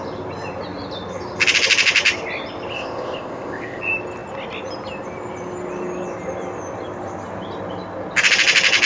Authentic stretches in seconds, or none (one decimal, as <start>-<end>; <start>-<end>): 0.0-2.7; 3.8-8.9